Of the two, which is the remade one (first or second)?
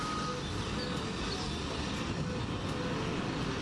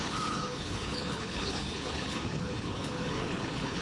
second